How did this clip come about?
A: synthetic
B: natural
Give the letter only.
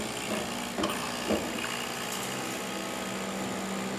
B